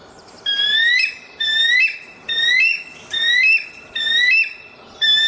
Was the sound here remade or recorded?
recorded